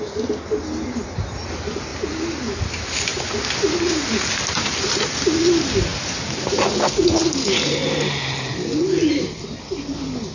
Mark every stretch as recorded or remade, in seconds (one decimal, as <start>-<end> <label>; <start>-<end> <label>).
0.0-10.3 recorded